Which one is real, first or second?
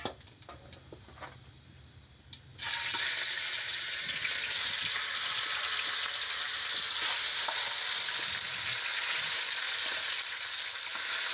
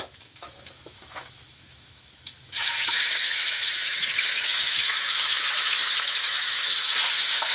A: first